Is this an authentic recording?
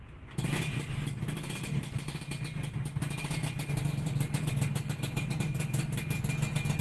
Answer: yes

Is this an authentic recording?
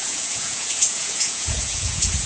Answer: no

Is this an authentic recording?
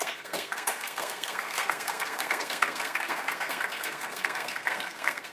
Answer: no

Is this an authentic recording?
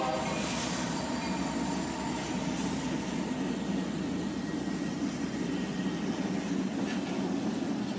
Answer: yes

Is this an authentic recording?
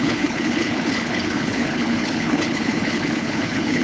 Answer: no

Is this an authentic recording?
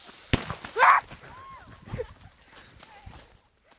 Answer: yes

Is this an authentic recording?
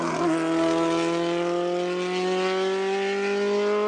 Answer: yes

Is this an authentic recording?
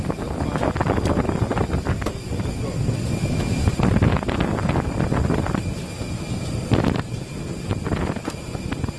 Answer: yes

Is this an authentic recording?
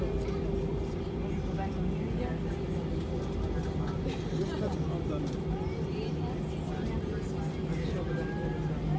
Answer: yes